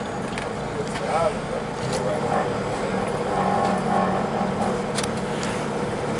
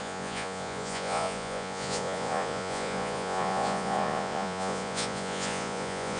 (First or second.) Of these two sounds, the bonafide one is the first